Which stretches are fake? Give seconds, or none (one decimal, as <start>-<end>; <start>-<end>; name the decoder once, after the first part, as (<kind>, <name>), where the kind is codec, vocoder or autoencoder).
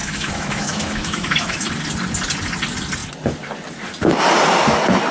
0.0-1.7 (autoencoder, DAC-VAE)